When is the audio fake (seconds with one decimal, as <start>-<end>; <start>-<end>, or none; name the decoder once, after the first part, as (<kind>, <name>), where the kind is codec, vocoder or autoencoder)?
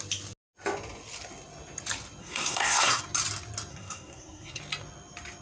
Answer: 2.2-3.0 (codec, SNAC); 3.7-4.6